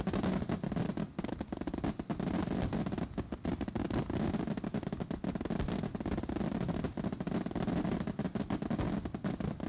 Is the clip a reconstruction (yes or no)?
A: no